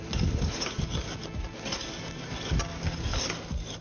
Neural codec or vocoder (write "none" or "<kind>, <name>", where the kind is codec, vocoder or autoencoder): none